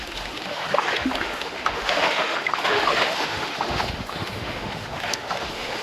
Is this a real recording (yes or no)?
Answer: no